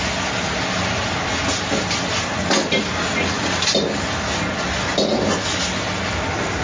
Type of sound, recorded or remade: recorded